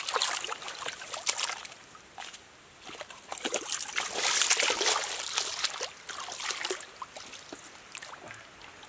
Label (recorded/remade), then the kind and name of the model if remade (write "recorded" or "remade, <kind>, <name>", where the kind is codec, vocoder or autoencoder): recorded